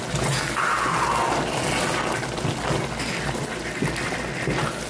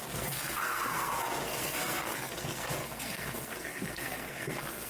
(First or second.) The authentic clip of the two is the first